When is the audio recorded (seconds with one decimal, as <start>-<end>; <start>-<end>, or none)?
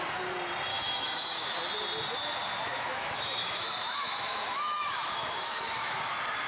0.0-0.7; 1.5-2.7; 6.1-6.5